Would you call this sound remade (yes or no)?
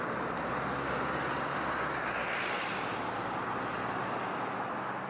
no